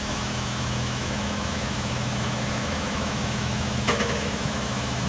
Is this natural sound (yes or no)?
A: no